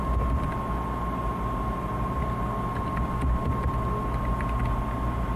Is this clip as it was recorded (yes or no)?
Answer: yes